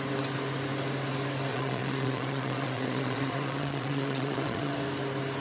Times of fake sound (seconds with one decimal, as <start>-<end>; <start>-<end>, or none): 1.5-4.7